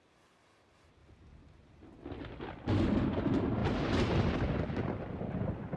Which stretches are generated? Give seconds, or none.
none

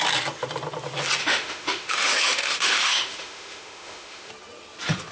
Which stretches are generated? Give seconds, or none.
1.2-4.3 (autoencoder, DAC-VAE)

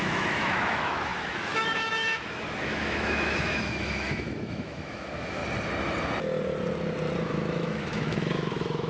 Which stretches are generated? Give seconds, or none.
0.0-5.4 (autoencoder, DAC-VAE); 7.2-8.9

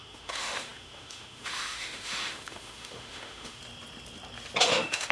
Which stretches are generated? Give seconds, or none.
0.0-3.6 (autoencoder, DAC-VAE); 4.6-5.1

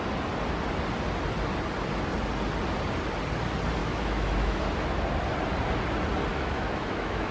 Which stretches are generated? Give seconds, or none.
3.8-4.6 (autoencoder, DAC-VAE); 6.3-7.3

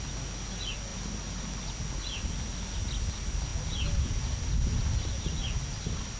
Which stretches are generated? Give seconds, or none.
none

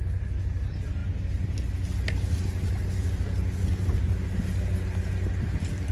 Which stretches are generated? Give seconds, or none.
none

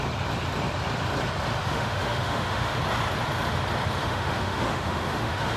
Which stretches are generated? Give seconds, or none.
1.6-2.8 (autoencoder, DAC-VAE); 4.0-5.6